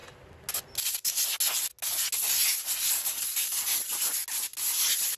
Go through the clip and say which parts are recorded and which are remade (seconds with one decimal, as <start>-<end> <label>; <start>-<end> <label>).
0.0-5.2 recorded